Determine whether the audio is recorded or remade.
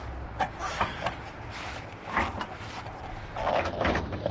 recorded